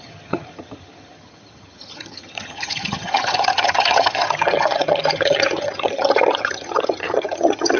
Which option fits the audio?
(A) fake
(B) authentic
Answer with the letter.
A